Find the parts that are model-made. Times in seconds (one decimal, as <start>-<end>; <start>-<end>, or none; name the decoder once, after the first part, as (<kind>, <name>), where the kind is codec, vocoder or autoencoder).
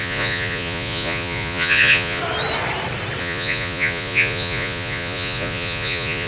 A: 0.0-2.2 (vocoder, Vocos); 3.2-6.3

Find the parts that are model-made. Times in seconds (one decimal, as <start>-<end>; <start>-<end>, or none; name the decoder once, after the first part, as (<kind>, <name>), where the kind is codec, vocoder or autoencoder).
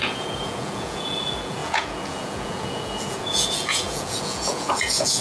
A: 0.0-5.2 (vocoder, Vocos)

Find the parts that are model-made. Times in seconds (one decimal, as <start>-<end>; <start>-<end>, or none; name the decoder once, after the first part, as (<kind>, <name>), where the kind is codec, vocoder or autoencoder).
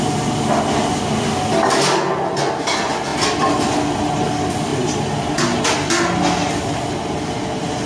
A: none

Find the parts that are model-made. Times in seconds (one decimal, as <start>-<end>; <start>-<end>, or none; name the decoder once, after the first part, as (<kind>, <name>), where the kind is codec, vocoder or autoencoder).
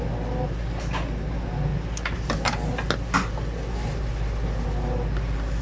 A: none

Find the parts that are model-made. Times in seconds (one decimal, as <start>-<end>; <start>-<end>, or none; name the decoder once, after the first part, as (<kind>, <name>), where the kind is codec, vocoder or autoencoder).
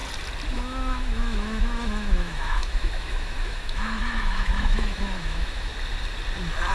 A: 0.5-5.7 (autoencoder, DAC-VAE)